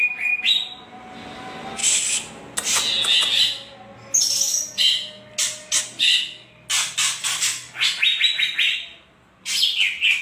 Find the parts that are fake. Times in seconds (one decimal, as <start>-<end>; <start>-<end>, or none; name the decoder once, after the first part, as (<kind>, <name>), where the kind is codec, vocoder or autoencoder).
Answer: 7.2-7.8 (codec, DAC)